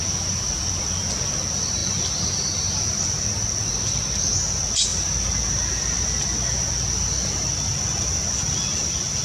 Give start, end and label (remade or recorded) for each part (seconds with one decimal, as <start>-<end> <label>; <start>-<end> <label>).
0.0-9.2 recorded